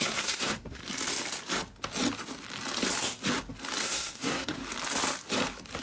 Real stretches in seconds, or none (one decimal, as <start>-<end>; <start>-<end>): 0.8-3.8; 4.6-5.8